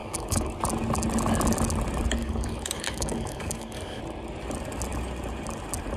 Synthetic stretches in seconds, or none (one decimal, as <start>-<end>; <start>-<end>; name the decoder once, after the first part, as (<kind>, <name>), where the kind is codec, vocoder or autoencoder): 0.0-0.5 (codec, DAC); 2.2-4.0